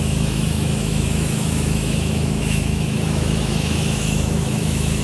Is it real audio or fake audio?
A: fake